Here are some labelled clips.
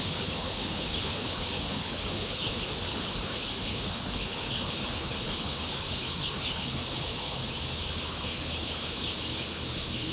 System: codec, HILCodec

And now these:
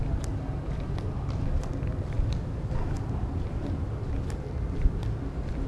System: none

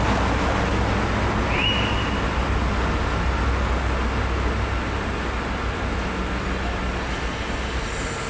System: none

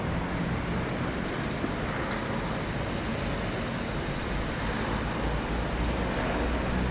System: none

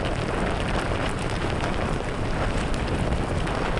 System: none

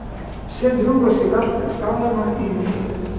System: none